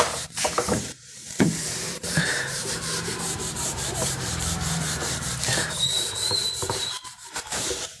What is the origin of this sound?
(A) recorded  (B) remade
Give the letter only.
B